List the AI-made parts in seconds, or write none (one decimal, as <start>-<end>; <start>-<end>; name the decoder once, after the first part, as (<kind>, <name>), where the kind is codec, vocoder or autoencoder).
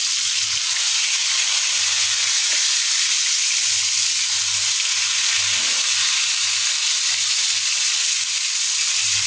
none